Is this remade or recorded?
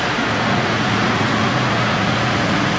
remade